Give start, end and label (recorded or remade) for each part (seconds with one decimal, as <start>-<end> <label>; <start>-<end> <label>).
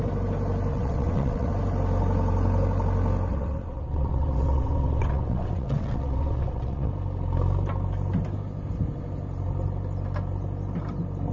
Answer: 0.0-0.7 recorded; 0.7-1.5 remade; 1.5-3.3 recorded; 3.3-6.9 remade; 6.9-11.3 recorded